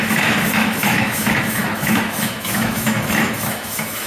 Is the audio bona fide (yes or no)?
no